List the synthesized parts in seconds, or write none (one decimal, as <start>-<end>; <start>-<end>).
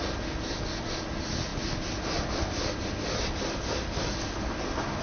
none